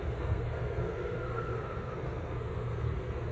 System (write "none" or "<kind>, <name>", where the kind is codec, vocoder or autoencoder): codec, SNAC